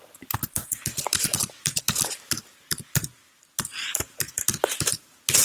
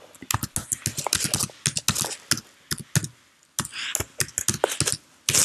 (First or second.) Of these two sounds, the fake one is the first